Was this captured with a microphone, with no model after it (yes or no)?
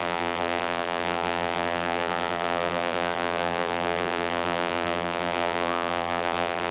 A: no